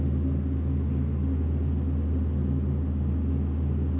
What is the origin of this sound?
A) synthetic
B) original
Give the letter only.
B